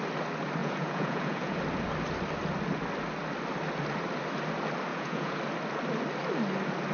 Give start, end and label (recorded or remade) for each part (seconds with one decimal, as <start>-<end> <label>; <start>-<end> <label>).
0.0-0.6 recorded; 0.6-1.6 remade; 1.6-4.9 recorded; 4.9-5.4 remade; 5.4-6.9 recorded